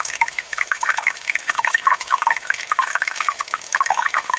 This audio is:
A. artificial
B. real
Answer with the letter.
A